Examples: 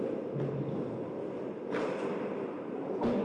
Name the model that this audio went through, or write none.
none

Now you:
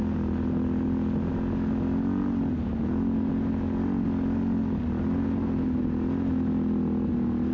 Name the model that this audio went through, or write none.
none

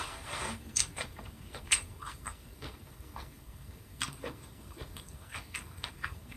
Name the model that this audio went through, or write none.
codec, SNAC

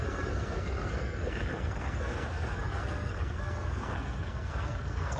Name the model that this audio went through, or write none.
codec, SNAC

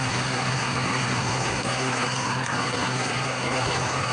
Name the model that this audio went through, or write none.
codec, SNAC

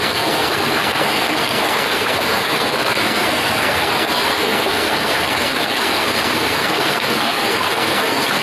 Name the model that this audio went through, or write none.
codec, SNAC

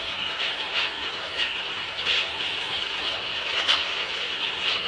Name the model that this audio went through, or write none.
codec, SNAC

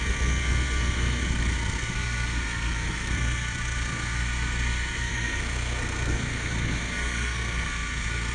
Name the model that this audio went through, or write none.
codec, SNAC